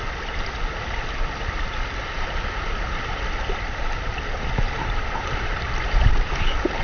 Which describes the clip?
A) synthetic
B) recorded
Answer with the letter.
B